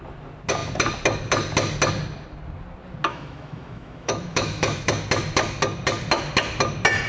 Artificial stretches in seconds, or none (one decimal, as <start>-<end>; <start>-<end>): 3.1-4.9